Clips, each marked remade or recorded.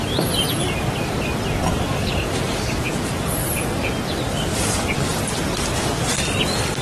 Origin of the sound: recorded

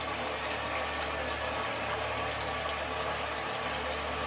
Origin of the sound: recorded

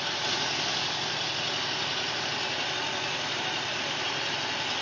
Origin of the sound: recorded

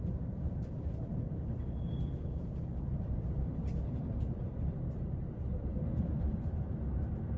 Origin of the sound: remade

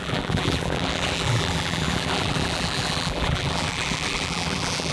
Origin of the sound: remade